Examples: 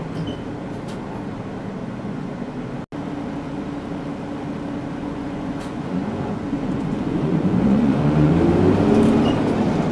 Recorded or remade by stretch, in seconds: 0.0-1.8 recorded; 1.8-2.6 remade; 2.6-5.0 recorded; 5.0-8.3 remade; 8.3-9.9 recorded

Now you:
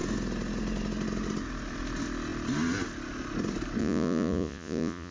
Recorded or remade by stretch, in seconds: 0.0-3.8 recorded; 3.8-5.1 remade

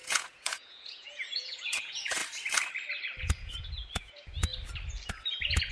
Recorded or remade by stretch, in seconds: 0.0-2.2 remade; 2.2-3.2 recorded; 3.2-4.5 remade; 4.5-5.1 recorded; 5.1-5.7 remade

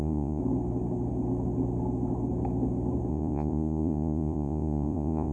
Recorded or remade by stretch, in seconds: 0.0-0.4 remade; 0.4-3.1 recorded; 3.1-5.3 remade

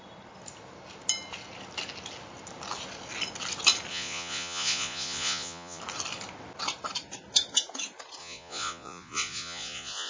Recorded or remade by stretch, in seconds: 0.0-3.9 recorded; 3.9-5.8 remade; 5.8-8.2 recorded; 8.2-10.1 remade